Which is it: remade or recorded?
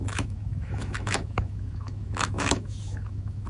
remade